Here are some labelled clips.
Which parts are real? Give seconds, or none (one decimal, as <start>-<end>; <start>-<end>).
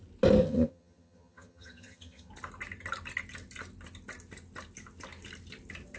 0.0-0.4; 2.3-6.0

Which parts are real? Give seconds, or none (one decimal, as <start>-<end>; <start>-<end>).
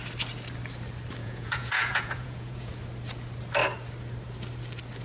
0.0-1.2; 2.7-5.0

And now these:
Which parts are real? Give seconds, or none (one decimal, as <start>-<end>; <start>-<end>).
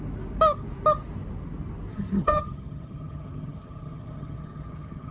0.0-1.9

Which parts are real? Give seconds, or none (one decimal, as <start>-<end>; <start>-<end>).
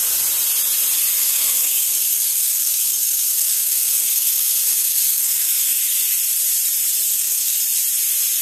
0.0-1.2; 5.8-7.1; 7.6-8.4